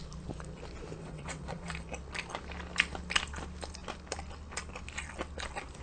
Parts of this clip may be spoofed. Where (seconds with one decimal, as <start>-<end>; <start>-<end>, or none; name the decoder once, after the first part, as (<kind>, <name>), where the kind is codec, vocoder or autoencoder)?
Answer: 1.0-1.7 (vocoder, WaveNeXt)